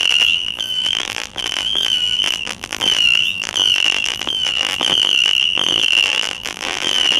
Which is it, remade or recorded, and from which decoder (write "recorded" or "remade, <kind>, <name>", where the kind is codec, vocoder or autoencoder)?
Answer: remade, vocoder, BigVGAN v2